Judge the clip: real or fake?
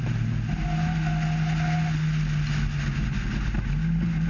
real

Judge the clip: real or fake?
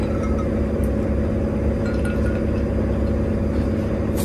real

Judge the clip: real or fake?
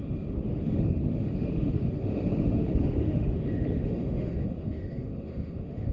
fake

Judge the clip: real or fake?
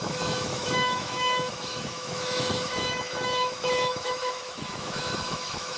fake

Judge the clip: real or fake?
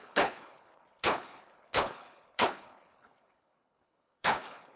fake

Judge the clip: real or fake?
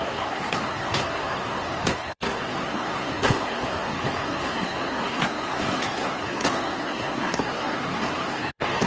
fake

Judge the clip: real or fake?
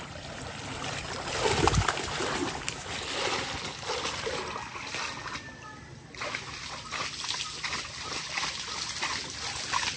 real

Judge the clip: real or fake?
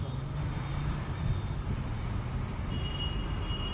real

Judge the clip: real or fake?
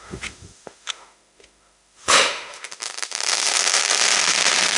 fake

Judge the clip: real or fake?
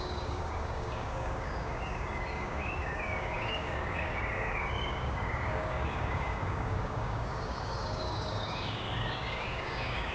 fake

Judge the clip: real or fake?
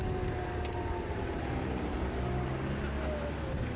real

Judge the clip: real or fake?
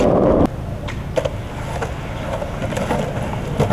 real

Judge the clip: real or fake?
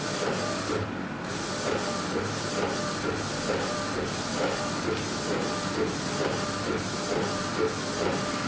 real